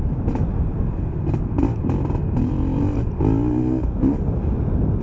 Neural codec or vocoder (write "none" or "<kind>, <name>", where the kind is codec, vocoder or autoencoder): none